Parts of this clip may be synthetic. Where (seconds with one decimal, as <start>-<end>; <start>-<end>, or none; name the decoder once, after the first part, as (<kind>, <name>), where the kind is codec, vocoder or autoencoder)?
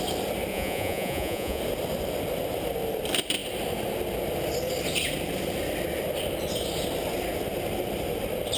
0.5-1.6 (vocoder, Vocos)